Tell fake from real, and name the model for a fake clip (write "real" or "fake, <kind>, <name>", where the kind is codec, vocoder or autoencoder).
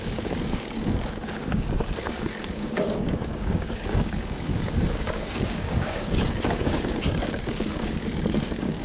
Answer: fake, codec, DAC